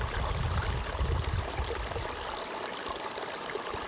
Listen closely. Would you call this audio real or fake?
real